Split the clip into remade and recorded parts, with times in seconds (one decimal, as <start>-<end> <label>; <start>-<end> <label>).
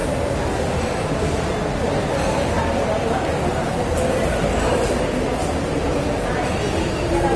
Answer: 0.0-7.4 recorded